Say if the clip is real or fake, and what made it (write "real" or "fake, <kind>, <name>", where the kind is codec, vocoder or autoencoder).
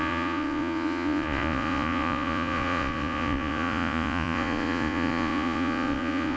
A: fake, vocoder, Vocos